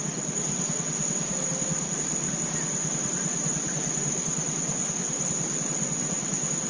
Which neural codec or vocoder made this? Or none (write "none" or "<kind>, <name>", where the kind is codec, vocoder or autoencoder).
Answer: none